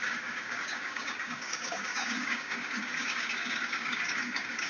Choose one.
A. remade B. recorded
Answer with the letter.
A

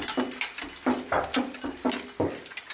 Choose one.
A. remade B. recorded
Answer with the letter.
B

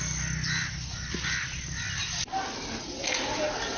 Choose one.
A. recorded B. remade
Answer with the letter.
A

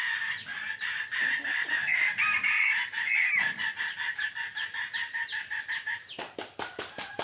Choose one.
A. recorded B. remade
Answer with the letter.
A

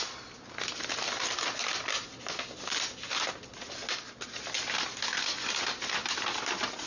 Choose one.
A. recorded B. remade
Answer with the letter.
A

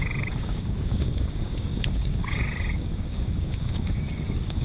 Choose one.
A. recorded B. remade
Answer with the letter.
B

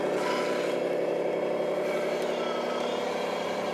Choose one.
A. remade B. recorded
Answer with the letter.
B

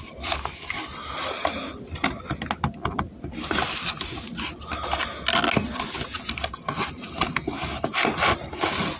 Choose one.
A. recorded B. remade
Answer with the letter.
A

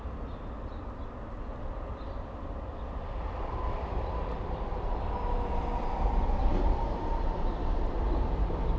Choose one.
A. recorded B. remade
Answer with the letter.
A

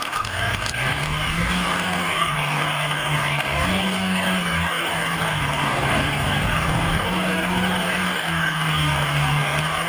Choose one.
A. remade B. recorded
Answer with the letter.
A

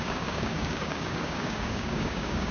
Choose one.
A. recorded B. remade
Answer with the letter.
B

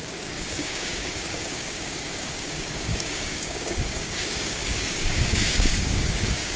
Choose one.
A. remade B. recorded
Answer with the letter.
A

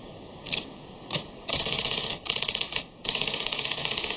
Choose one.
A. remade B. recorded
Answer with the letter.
A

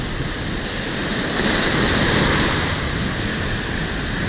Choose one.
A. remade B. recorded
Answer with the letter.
B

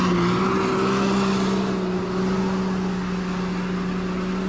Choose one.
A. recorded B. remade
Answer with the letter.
A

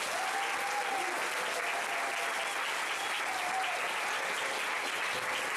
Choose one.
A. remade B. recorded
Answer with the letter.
B